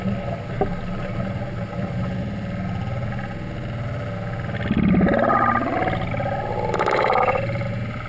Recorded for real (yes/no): yes